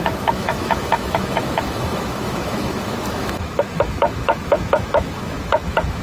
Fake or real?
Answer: fake